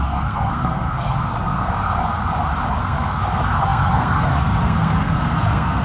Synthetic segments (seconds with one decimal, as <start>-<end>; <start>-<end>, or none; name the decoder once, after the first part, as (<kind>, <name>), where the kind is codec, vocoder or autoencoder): 0.0-2.2 (codec, SNAC); 2.8-5.8